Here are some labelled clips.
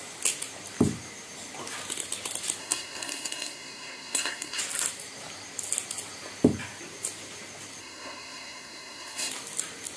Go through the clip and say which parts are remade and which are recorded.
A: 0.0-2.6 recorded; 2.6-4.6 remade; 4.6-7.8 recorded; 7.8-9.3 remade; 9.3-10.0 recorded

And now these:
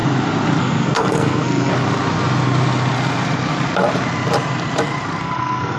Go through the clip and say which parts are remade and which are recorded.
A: 0.0-0.6 recorded; 0.6-1.7 remade; 1.7-5.2 recorded; 5.2-5.8 remade

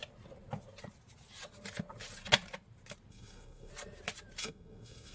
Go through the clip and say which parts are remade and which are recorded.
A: 0.0-3.1 recorded; 3.1-3.7 remade; 3.7-4.4 recorded; 4.4-5.1 remade

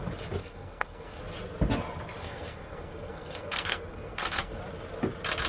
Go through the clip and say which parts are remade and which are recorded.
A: 0.0-0.4 recorded; 0.4-1.2 remade; 1.2-2.2 recorded; 2.2-4.6 remade; 4.6-5.5 recorded

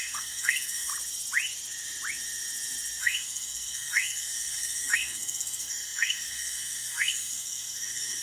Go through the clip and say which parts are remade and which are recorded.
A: 0.0-0.9 remade; 0.9-3.0 recorded; 3.0-8.2 remade